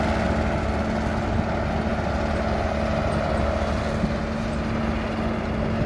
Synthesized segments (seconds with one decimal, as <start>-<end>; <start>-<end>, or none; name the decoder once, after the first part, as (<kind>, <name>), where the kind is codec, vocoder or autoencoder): none